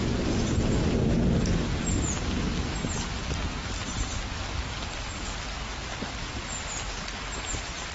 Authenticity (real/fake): real